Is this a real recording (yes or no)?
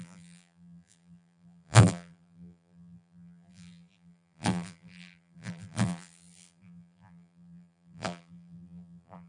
no